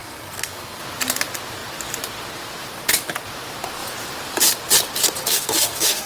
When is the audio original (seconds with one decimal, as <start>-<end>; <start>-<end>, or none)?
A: 0.8-5.2